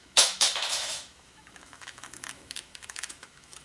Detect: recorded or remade remade